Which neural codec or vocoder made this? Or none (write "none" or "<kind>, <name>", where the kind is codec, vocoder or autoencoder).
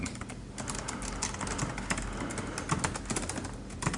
none